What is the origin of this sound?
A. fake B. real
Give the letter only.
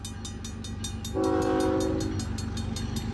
B